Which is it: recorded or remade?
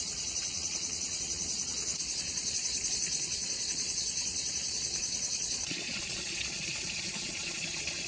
remade